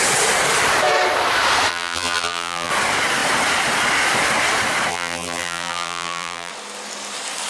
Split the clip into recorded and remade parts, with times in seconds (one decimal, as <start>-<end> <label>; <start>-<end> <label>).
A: 0.0-1.7 recorded; 1.7-2.7 remade; 2.7-4.9 recorded; 4.9-6.5 remade; 6.5-7.5 recorded